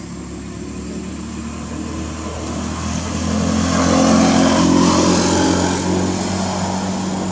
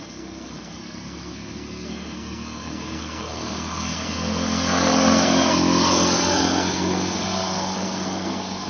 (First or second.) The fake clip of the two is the second